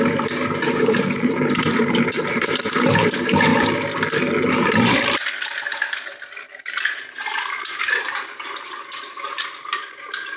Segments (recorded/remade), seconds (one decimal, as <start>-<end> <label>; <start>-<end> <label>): 0.0-3.5 remade; 3.5-6.6 recorded; 6.6-10.4 remade

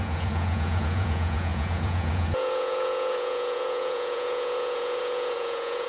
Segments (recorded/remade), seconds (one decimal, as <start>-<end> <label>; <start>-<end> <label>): 0.0-5.9 remade